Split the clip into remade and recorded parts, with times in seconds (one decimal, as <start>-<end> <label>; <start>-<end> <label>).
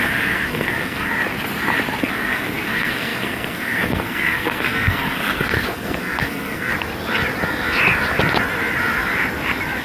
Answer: 0.0-1.1 remade; 1.1-2.0 recorded; 2.0-6.7 remade; 6.7-9.8 recorded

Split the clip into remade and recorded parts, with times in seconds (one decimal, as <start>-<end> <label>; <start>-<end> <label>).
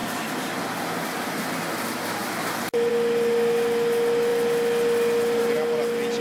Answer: 0.0-2.2 recorded; 2.2-2.9 remade; 2.9-6.2 recorded